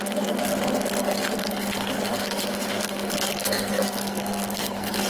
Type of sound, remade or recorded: remade